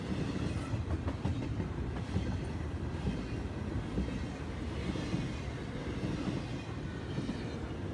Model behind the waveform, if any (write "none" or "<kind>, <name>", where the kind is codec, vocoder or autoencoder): none